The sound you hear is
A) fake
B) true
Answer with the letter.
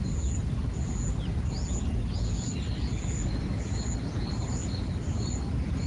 B